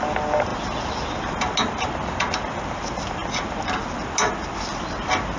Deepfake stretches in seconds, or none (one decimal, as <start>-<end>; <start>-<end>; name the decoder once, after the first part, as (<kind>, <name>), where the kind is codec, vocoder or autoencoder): none

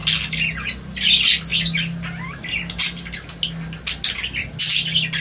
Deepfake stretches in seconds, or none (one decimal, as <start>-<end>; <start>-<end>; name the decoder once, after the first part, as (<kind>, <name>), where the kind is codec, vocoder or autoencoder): none